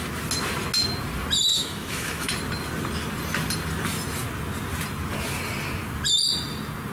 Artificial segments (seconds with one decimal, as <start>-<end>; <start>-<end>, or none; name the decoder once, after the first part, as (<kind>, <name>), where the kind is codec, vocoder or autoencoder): 1.5-2.3 (autoencoder, DAC-VAE)

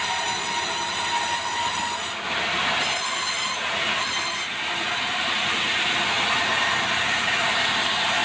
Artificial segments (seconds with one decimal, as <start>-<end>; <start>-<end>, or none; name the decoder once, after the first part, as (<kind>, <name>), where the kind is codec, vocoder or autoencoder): none

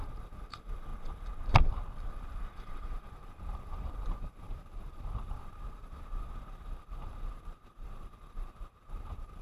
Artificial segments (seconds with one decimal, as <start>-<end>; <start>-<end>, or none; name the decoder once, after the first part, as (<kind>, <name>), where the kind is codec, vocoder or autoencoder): 0.0-9.4 (vocoder, BigVGAN v2)

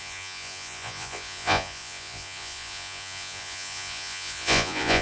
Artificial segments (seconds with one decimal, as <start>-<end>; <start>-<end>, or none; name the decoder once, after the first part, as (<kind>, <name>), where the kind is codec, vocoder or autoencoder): 0.0-5.0 (vocoder, Vocos)